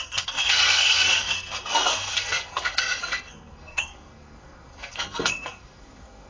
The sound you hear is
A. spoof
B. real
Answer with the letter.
A